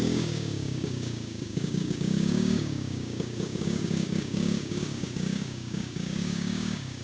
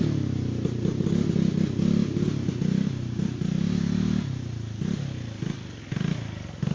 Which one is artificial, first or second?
first